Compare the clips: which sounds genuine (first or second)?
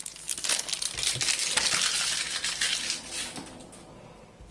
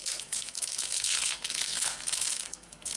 first